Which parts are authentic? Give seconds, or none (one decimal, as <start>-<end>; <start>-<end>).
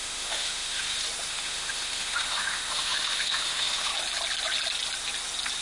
0.8-1.3; 3.9-5.6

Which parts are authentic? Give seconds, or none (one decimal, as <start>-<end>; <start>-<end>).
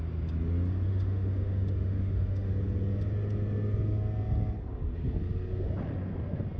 0.0-0.9; 2.5-6.6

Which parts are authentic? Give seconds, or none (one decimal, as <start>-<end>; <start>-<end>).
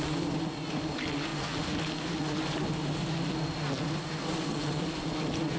0.0-5.6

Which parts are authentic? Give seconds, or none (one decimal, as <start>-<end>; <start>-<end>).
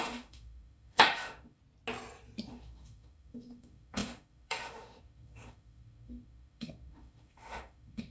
1.6-2.5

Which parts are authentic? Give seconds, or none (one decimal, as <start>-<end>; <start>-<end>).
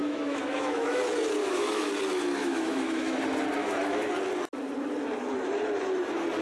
1.0-1.4; 1.9-2.4; 3.2-3.6; 4.1-6.4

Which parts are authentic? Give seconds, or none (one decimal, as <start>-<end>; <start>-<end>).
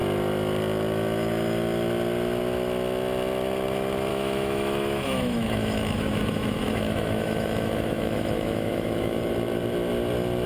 0.0-4.1; 9.2-10.5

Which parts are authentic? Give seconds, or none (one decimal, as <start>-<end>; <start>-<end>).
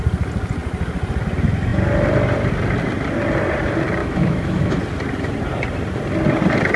0.0-4.0; 4.8-6.8